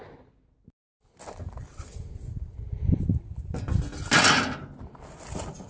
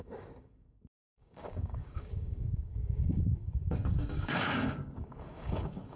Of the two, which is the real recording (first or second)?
first